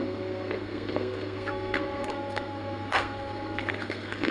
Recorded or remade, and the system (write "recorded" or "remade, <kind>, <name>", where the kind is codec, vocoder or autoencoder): remade, codec, SNAC